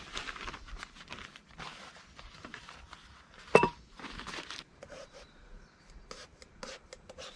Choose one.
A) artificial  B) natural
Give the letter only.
B